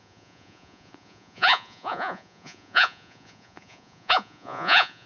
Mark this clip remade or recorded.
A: remade